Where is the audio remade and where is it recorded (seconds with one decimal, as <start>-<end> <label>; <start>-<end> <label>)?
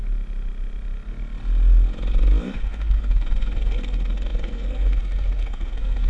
0.0-2.4 recorded; 2.4-6.1 remade